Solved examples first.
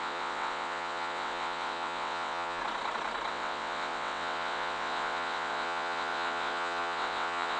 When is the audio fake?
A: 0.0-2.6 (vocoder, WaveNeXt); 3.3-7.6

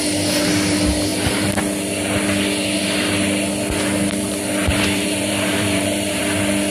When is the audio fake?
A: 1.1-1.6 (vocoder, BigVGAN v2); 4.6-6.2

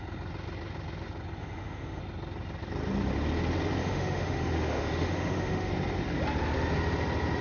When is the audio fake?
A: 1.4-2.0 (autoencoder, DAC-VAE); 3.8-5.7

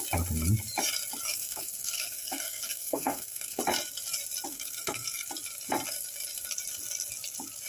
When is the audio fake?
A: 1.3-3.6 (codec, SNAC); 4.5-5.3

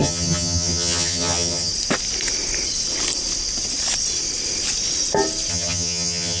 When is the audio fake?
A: 0.0-1.7 (vocoder, HiFi-GAN); 5.5-6.4

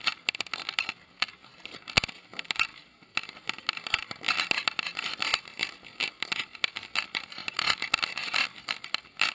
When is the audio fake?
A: none

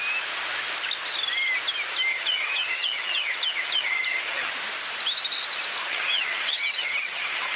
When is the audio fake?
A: 2.1-4.5 (vocoder, HiFi-GAN); 5.9-7.6

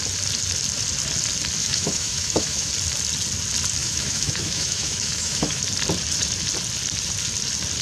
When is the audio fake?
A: 1.6-2.7 (autoencoder, DAC-VAE); 3.8-5.6